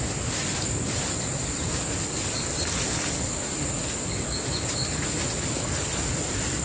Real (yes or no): yes